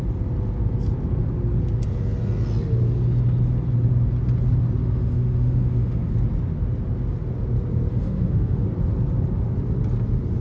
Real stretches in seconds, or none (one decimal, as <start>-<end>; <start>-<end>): 0.0-4.8; 6.1-7.9; 8.7-10.4